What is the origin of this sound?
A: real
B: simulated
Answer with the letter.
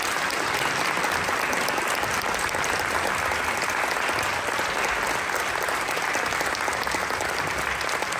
A